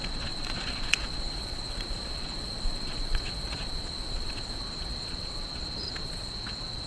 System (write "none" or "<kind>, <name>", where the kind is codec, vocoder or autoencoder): vocoder, Vocos